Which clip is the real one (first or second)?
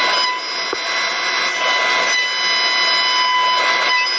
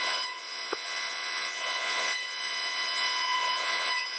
first